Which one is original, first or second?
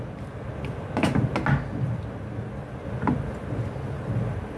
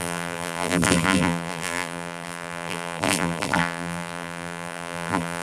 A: first